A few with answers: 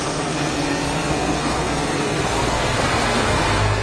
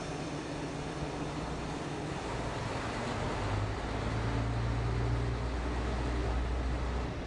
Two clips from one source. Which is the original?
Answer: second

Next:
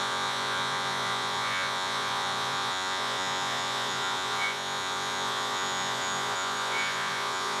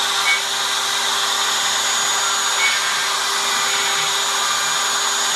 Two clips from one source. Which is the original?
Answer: second